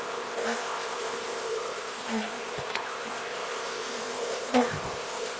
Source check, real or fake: fake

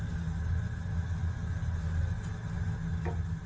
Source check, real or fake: real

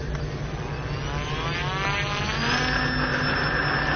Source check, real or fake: real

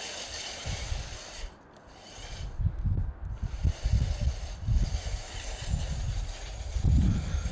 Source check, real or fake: real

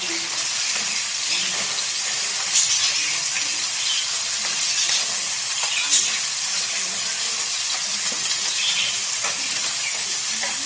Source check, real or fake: real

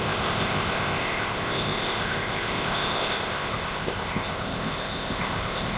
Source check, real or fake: fake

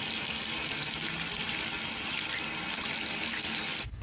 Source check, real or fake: real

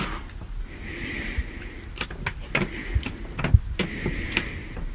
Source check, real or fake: real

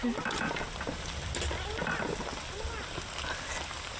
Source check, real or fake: real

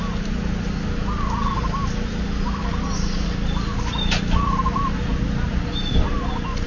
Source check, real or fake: real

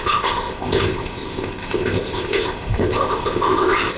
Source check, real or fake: fake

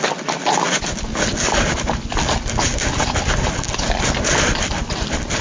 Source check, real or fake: real